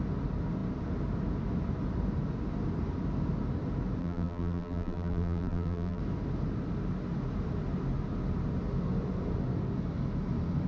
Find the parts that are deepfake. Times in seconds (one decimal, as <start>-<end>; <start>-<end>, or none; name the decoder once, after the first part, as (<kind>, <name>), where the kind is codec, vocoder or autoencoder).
4.0-6.0 (vocoder, BigVGAN v2)

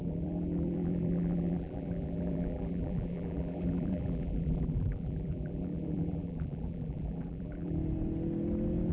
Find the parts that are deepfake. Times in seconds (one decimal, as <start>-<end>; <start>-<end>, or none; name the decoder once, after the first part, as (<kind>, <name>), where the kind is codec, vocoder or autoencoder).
0.0-7.8 (vocoder, BigVGAN v2)

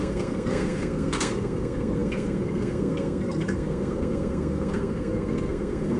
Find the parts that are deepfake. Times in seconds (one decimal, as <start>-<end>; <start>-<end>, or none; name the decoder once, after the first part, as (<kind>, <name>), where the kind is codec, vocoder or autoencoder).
0.0-6.0 (codec, SNAC)

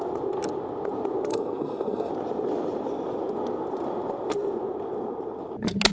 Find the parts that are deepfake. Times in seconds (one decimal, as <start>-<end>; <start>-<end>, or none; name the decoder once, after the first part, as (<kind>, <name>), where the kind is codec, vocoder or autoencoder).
1.3-2.1 (codec, SNAC)

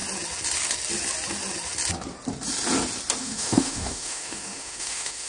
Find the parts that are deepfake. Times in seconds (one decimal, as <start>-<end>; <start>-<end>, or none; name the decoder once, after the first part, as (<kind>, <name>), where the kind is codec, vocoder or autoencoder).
3.2-5.3 (autoencoder, DAC-VAE)

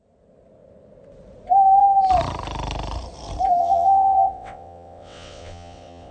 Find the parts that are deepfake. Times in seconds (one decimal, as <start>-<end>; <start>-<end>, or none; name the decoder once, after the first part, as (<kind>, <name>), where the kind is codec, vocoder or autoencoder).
3.6-6.1 (vocoder, WaveNeXt)

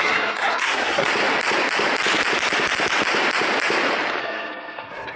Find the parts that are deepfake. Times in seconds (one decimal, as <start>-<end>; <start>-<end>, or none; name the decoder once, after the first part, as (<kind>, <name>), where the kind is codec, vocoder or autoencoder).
0.0-1.1 (codec, SNAC); 4.2-5.2